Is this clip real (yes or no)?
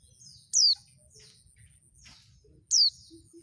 yes